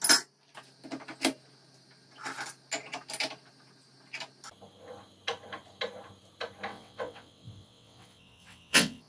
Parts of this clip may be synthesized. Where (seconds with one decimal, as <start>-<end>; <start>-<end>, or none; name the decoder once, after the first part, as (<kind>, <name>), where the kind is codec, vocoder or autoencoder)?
6.7-9.1 (vocoder, WaveNeXt)